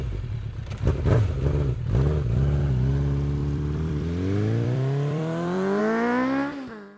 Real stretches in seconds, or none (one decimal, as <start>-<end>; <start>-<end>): 0.0-0.6; 2.6-3.4; 5.8-7.0